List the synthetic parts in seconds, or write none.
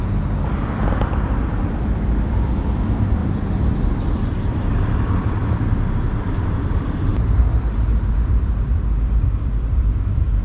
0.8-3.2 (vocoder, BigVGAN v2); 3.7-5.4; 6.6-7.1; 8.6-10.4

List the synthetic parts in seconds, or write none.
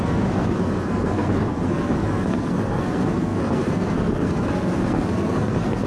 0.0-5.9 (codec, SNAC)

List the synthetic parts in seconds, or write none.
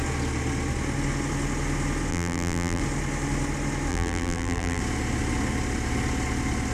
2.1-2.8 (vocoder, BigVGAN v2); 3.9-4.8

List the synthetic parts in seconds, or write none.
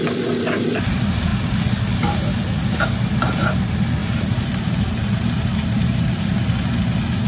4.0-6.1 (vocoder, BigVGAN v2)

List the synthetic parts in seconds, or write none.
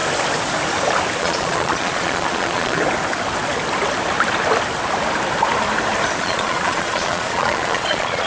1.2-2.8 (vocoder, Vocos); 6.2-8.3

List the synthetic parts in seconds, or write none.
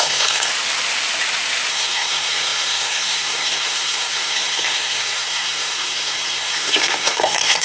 0.0-0.5 (codec, SNAC); 1.7-7.6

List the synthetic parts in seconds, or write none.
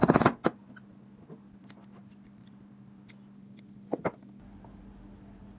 none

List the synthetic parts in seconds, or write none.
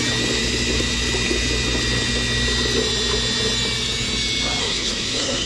4.6-5.5 (codec, SNAC)